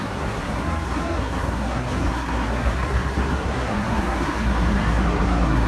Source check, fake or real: fake